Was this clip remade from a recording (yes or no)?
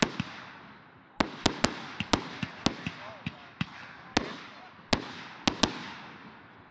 no